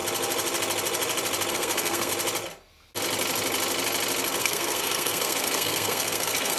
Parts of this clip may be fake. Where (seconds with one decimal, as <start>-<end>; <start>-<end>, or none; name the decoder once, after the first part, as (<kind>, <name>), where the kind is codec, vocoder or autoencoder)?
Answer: 1.5-2.1 (codec, SNAC); 4.4-6.6